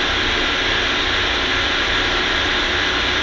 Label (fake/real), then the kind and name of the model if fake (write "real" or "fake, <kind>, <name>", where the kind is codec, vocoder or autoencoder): real